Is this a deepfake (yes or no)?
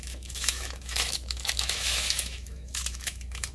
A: yes